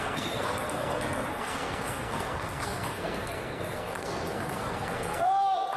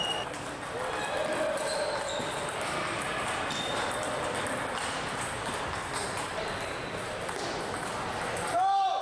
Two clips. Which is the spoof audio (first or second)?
first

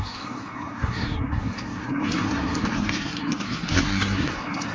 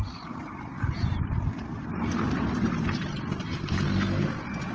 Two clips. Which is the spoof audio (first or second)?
first